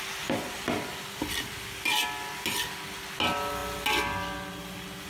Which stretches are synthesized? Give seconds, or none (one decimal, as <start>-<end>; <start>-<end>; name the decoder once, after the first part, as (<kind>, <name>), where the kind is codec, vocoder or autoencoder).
none